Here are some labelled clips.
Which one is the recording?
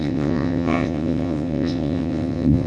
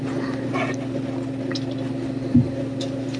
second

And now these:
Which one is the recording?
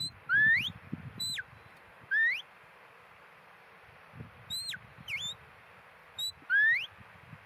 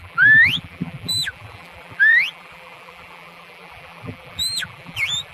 first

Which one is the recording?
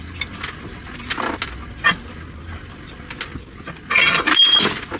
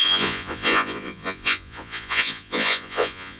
first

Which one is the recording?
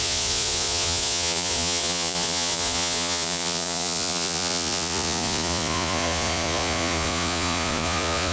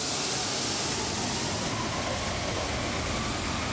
second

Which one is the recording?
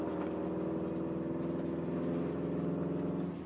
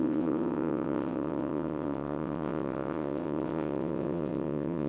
first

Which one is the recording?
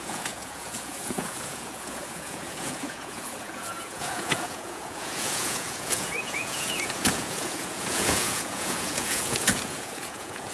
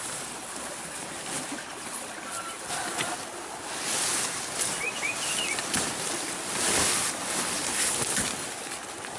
second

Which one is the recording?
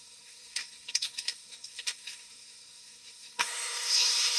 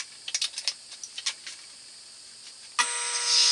second